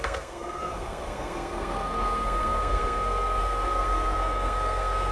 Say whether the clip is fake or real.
fake